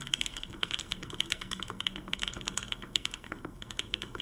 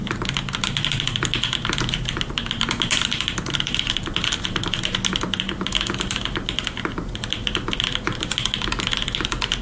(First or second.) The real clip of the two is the second